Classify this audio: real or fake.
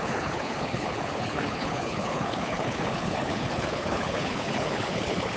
fake